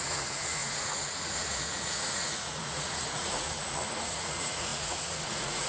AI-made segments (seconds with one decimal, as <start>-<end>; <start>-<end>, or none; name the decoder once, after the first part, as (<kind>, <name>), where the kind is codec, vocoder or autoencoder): 0.0-5.7 (vocoder, Vocos)